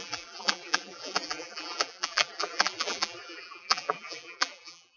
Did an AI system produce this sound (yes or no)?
yes